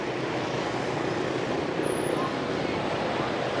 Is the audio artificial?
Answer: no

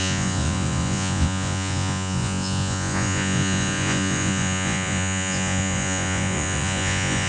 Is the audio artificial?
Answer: yes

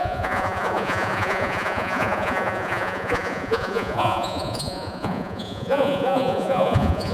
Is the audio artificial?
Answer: yes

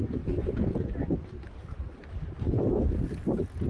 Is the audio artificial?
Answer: no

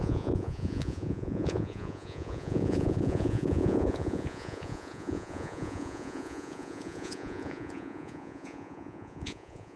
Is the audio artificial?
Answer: yes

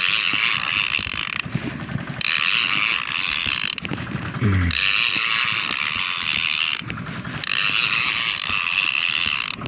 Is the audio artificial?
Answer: no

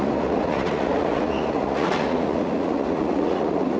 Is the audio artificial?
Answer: yes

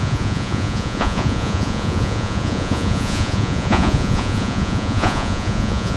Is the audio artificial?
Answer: yes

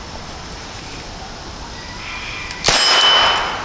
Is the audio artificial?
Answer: no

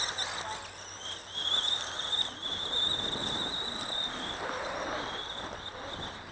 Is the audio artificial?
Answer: no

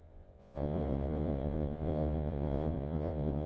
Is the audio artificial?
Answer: yes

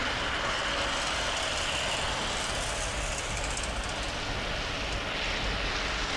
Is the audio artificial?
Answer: no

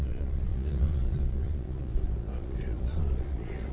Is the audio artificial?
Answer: yes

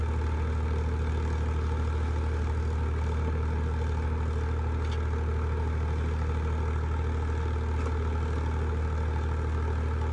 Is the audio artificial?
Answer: no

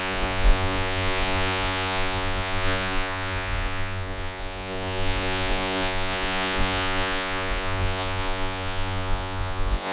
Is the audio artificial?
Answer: yes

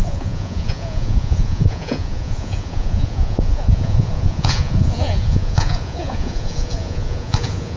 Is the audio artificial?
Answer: yes